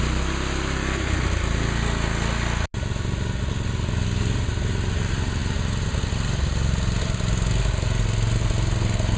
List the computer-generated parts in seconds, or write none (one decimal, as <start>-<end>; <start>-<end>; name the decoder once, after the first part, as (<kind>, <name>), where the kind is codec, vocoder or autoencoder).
none